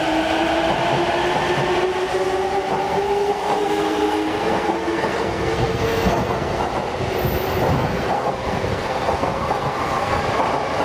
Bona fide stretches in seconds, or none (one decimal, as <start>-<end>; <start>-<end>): 0.0-2.8; 6.6-7.8; 10.2-10.8